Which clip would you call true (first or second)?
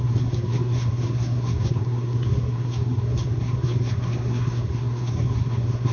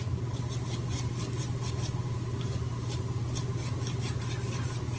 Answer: second